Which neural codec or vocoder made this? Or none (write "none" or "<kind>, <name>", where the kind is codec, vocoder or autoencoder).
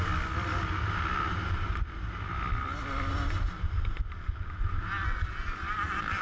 none